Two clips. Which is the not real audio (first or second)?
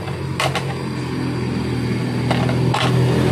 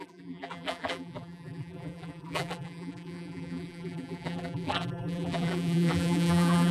second